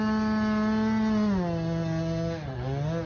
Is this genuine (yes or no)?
yes